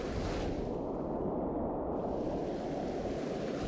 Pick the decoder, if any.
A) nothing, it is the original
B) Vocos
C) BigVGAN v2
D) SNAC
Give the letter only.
A